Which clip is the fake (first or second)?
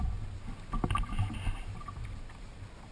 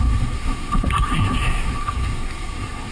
second